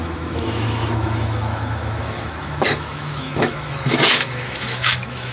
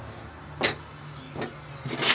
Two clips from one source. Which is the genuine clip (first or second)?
second